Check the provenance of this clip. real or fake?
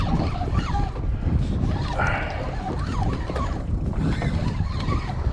real